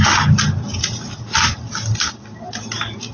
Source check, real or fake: real